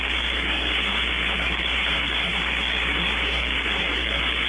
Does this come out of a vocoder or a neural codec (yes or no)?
yes